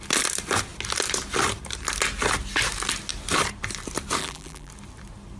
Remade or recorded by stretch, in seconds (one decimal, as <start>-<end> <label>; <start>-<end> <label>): 0.0-4.2 recorded; 4.2-4.7 remade; 4.7-5.4 recorded